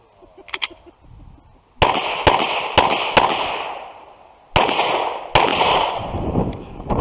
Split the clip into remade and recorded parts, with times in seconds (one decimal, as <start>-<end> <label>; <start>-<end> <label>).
0.0-5.5 recorded; 5.5-7.0 remade